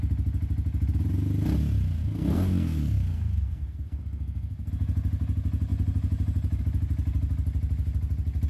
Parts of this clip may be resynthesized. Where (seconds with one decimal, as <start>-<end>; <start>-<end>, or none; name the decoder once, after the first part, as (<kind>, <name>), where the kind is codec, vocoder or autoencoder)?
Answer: 2.0-4.7 (codec, SNAC)